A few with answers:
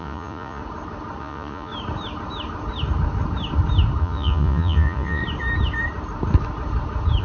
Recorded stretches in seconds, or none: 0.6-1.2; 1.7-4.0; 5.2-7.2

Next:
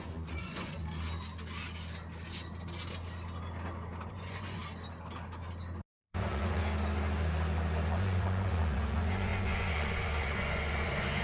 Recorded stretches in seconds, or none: 0.8-4.1; 4.6-6.0; 6.6-7.9

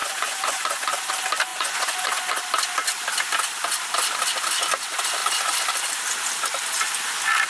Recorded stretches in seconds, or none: 1.1-1.5; 2.4-7.5